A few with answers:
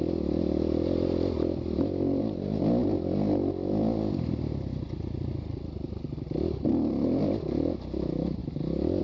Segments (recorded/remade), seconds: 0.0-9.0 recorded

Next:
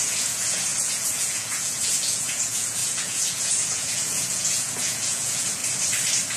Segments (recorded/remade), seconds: 0.0-5.6 remade; 5.6-6.4 recorded

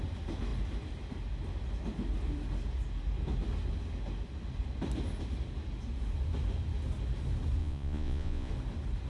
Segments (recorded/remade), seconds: 0.0-7.6 recorded; 7.6-8.5 remade; 8.5-9.1 recorded